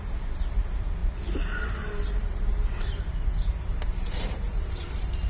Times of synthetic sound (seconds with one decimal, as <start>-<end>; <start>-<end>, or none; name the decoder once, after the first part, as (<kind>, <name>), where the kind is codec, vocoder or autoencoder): 1.0-3.1 (vocoder, BigVGAN v2); 3.7-5.3